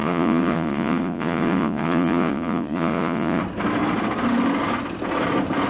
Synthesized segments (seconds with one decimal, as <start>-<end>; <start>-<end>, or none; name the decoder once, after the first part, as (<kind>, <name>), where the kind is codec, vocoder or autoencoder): 0.0-3.4 (vocoder, Vocos)